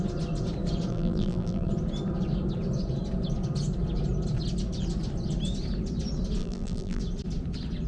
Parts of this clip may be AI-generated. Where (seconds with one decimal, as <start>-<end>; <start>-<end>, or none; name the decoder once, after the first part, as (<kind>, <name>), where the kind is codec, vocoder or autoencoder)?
0.9-1.7 (vocoder, BigVGAN v2); 6.4-7.0